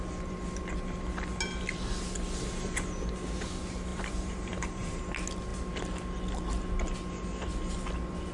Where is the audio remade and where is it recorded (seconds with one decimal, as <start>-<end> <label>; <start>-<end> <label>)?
0.0-3.9 recorded; 3.9-5.0 remade; 5.0-8.3 recorded